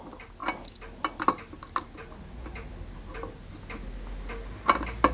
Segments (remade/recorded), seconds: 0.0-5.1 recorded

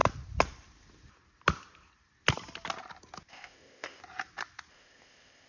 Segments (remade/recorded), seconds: 0.0-3.3 recorded; 3.3-4.0 remade; 4.0-4.7 recorded; 4.7-5.5 remade

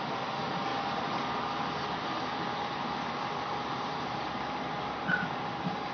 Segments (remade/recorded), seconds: 0.0-5.9 recorded